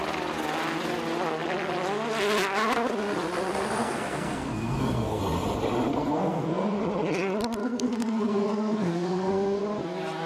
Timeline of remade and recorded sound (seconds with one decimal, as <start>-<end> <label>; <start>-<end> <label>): 0.0-3.8 recorded; 3.8-5.2 remade; 5.2-5.9 recorded; 5.9-6.8 remade; 6.8-7.6 recorded; 7.6-9.6 remade; 9.6-10.3 recorded